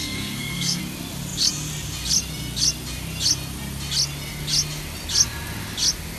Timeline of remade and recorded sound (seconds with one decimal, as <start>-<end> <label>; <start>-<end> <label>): 0.0-0.8 remade; 0.8-6.2 recorded